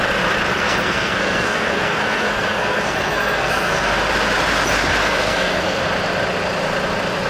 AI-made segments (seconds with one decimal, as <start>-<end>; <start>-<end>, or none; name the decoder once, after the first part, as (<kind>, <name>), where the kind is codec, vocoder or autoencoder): 0.5-3.9 (codec, SNAC); 5.0-5.8